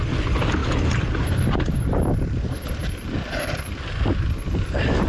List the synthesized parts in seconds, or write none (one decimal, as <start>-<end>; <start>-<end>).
2.8-5.1